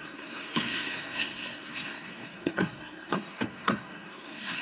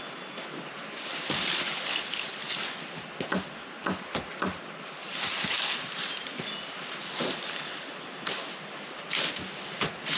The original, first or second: second